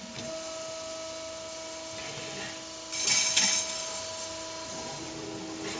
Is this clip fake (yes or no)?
no